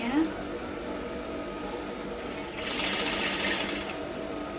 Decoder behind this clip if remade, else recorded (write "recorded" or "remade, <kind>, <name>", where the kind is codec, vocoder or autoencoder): recorded